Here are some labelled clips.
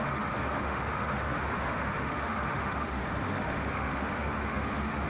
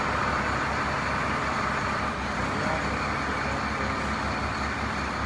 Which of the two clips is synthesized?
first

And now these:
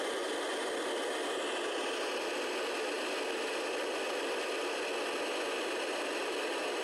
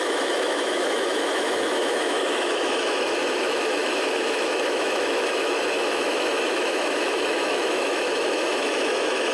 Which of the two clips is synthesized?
second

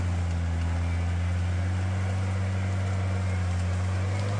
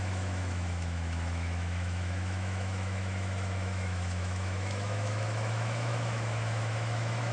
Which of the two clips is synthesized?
second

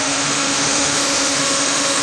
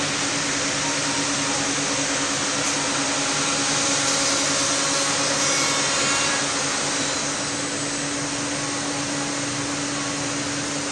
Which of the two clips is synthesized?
first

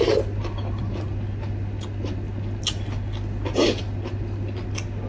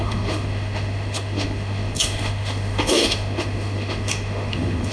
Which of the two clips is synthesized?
second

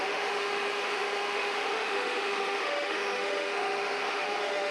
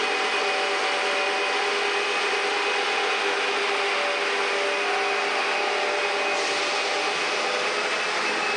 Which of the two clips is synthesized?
first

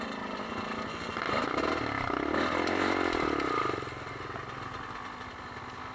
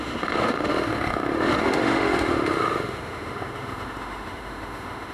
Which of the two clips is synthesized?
second